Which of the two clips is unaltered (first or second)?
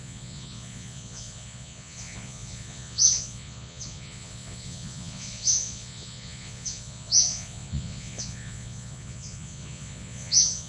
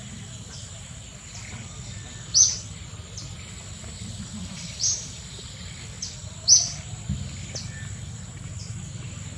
second